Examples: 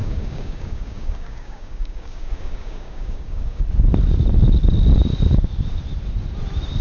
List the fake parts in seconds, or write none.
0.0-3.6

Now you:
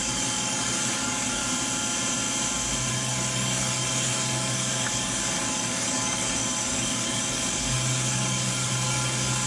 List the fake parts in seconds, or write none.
0.0-1.4; 2.9-9.5

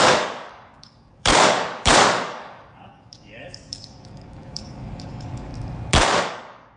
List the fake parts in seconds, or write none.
0.0-5.5; 6.2-6.8

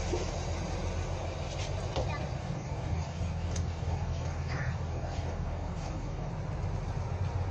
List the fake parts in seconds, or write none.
2.4-6.3